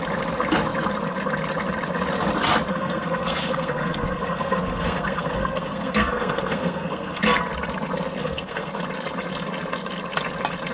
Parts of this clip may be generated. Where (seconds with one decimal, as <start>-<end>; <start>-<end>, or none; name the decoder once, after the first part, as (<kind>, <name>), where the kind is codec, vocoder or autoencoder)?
2.7-7.4 (codec, SNAC); 8.2-8.7